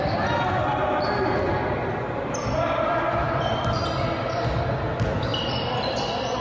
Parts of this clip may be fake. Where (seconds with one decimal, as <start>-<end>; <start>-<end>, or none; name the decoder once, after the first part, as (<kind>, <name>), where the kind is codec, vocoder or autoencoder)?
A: none